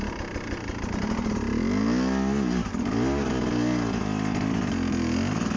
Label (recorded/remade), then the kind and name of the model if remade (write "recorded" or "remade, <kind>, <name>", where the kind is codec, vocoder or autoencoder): recorded